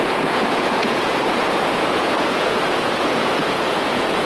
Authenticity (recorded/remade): remade